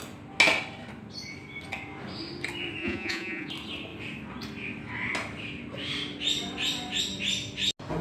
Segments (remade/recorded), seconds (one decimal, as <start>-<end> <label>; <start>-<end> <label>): 0.0-2.8 recorded; 2.8-3.5 remade; 3.5-8.0 recorded